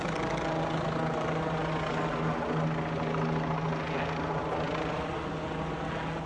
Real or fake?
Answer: real